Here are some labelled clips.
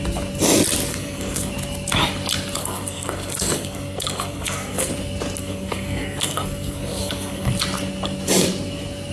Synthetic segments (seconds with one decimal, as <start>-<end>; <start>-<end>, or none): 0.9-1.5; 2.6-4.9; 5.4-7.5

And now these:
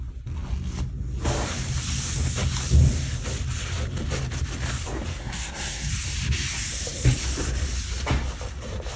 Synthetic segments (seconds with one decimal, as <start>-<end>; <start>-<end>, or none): 5.2-5.9

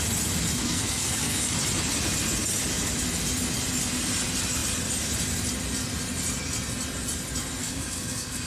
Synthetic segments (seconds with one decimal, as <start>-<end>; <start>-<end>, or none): 0.6-1.4; 7.6-8.5

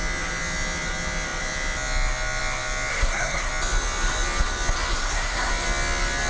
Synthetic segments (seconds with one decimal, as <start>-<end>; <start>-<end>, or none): 2.9-3.5; 4.9-5.5

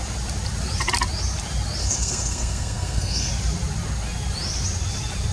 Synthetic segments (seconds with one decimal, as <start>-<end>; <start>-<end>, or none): 1.8-3.3

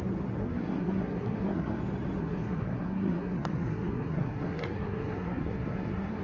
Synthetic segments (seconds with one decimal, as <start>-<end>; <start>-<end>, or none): 0.4-1.8; 2.2-6.2

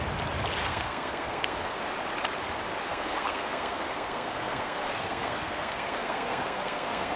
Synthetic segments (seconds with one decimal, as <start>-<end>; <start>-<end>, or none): 0.6-1.8; 2.8-7.2